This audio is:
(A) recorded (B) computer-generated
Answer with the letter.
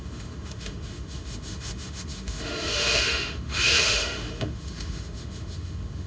B